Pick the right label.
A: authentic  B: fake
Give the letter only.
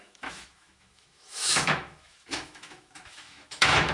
B